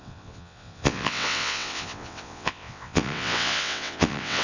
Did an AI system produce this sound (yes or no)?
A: yes